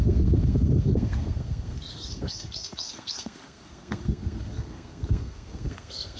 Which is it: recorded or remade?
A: remade